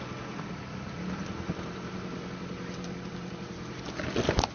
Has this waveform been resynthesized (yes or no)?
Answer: no